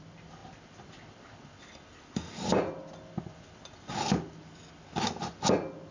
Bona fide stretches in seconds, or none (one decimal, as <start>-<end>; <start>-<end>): 0.0-5.9